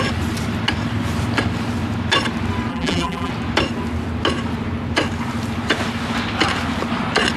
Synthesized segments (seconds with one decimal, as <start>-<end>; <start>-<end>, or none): 2.7-3.3